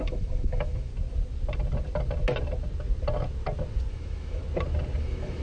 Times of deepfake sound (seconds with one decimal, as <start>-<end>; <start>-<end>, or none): 0.0-0.9; 3.9-4.4; 5.0-5.4